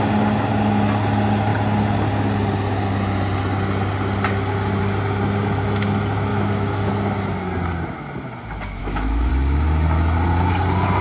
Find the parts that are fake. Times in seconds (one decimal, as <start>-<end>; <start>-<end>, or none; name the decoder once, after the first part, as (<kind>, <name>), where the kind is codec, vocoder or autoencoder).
6.3-6.9 (autoencoder, DAC-VAE); 8.8-9.3